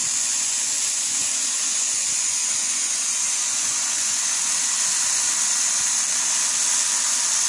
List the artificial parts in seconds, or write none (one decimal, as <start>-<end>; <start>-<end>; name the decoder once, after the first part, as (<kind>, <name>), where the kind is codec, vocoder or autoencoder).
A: 0.0-4.5 (vocoder, Vocos)